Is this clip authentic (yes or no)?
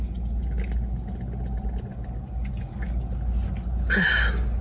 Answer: yes